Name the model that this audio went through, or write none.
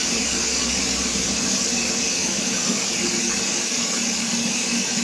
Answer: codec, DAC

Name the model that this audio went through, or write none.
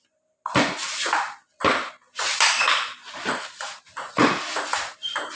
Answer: none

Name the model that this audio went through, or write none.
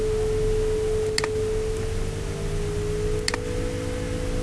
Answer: none